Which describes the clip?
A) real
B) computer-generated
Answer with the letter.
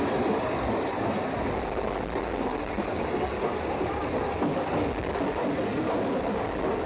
A